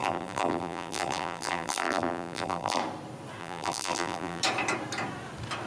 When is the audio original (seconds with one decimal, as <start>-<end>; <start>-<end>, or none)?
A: 2.8-3.4; 4.4-5.7